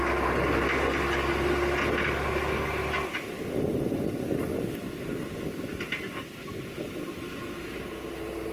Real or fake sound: real